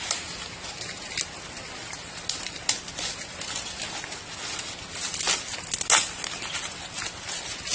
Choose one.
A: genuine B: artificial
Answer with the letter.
A